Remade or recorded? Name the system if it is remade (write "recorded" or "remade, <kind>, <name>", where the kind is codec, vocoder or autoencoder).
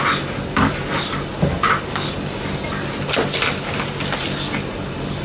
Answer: recorded